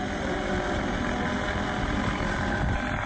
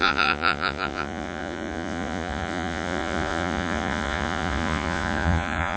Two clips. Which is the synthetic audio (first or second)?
second